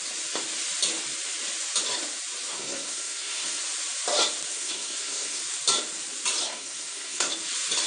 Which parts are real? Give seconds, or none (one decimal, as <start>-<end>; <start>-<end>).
0.0-2.5; 3.6-4.5; 5.4-6.4; 7.3-7.9